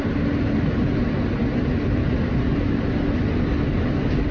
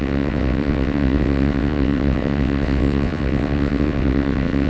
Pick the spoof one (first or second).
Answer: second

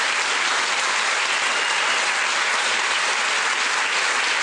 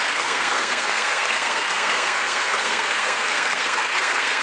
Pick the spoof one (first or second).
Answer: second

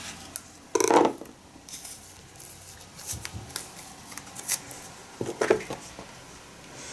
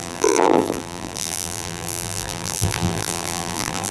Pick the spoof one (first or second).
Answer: second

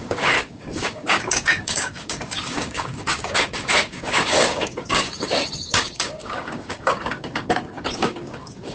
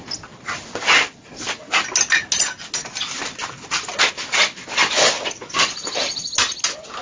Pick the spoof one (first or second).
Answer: first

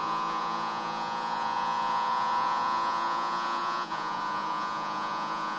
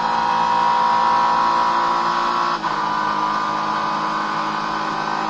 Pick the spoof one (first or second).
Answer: first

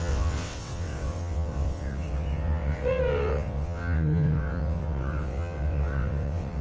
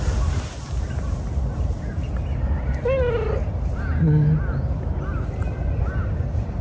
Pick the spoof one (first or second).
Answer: first